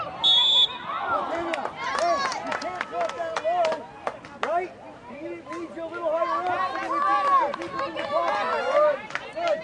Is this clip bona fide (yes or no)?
yes